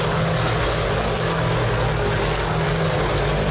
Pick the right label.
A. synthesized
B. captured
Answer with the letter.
B